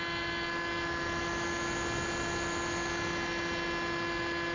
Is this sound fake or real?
real